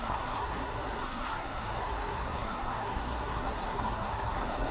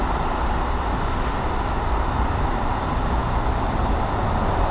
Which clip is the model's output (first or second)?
first